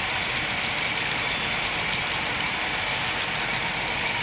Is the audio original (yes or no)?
yes